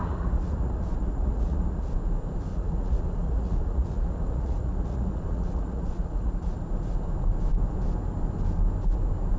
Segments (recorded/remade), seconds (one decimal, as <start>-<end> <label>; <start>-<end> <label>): 0.0-1.9 remade; 1.9-2.5 recorded; 2.5-6.6 remade; 6.6-9.4 recorded